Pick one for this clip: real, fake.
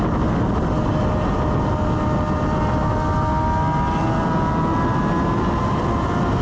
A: real